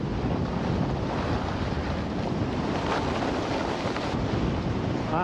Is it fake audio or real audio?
real